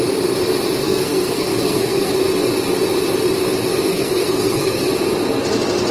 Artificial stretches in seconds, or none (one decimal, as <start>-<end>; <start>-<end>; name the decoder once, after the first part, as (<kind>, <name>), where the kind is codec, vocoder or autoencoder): 0.8-2.1 (codec, SNAC); 3.9-4.9